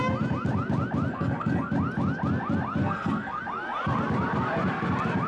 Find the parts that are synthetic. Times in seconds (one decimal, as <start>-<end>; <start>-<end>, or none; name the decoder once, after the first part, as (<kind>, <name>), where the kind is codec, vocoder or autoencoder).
1.1-1.7 (codec, SNAC); 2.8-3.4